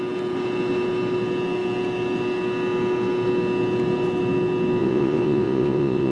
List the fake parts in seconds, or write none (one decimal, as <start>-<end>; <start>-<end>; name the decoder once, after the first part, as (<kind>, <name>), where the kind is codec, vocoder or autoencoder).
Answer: 4.8-6.1 (vocoder, Vocos)